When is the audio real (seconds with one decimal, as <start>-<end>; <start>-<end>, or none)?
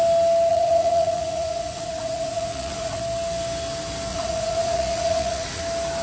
0.0-0.5; 3.0-4.1; 5.6-6.0